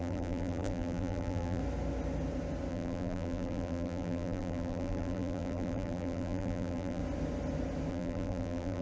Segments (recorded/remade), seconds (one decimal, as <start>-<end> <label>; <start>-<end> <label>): 0.0-1.6 remade; 1.6-2.7 recorded; 2.7-7.0 remade; 7.0-7.9 recorded; 7.9-8.8 remade